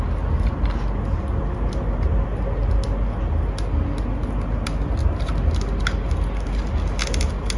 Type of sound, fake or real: real